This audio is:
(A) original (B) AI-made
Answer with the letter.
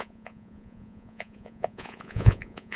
B